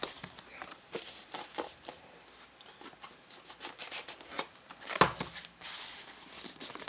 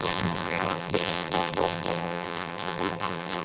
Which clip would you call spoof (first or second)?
second